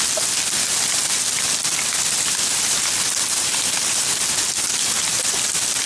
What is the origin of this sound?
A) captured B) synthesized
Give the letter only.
A